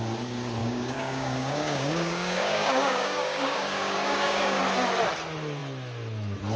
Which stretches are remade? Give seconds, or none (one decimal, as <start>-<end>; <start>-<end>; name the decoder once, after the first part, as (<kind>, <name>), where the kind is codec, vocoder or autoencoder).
0.6-4.6 (codec, DAC)

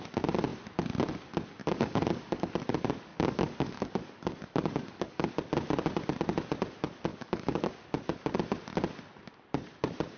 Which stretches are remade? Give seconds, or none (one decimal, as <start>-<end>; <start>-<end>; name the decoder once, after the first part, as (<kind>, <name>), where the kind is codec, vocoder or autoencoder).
1.6-2.5 (codec, DAC); 3.1-5.3; 7.1-7.7

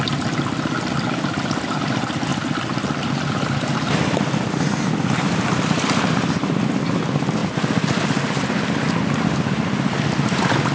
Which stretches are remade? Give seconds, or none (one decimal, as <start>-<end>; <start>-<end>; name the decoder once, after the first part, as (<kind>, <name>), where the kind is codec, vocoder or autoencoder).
none

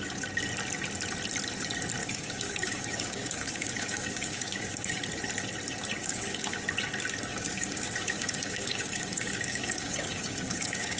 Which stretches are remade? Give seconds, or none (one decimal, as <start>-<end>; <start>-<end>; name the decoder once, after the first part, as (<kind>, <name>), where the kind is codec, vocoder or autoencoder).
2.0-5.0 (codec, DAC); 6.0-6.6; 7.3-11.0